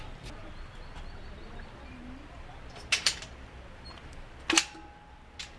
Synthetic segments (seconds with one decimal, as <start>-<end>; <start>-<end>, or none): none